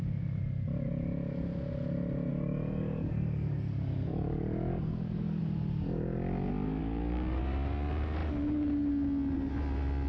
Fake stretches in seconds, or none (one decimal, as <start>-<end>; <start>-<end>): 2.3-5.4; 6.8-7.4